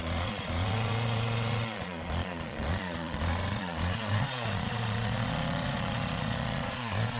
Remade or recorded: remade